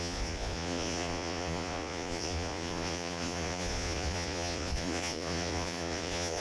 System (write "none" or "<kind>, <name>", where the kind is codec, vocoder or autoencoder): vocoder, Vocos